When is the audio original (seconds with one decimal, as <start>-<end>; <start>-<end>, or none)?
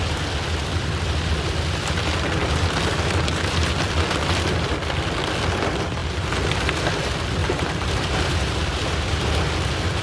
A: 0.0-7.4; 9.3-10.0